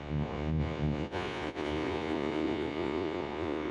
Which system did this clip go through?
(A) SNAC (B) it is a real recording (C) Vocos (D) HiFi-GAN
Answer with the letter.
C